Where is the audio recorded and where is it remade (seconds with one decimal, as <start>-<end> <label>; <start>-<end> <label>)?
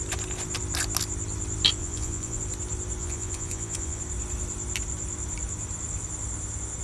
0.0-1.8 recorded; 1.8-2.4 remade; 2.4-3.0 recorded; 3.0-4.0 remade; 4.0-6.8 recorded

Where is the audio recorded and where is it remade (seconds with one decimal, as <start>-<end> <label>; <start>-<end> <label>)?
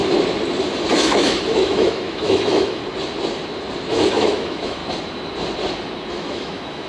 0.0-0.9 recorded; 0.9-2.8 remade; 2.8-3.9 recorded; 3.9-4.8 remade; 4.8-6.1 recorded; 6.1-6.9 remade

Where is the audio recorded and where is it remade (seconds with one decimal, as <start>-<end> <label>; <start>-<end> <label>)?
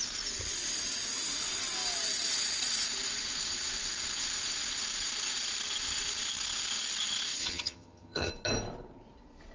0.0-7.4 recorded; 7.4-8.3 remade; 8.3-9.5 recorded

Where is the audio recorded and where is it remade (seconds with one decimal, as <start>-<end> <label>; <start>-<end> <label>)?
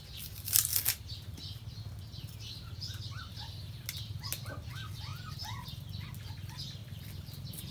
0.0-5.1 recorded; 5.1-6.1 remade; 6.1-6.8 recorded; 6.8-7.7 remade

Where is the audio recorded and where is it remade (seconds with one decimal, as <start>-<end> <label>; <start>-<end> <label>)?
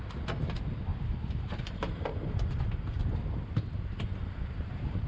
0.0-0.9 recorded; 0.9-3.0 remade; 3.0-5.1 recorded